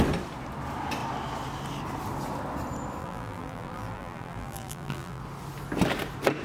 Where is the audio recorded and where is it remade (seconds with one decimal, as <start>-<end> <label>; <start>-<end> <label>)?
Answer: 0.0-3.0 recorded; 3.0-5.2 remade; 5.2-6.4 recorded